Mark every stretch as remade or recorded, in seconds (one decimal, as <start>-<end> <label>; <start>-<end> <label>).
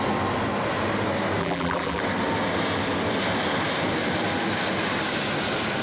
0.0-1.4 recorded; 1.4-2.0 remade; 2.0-5.8 recorded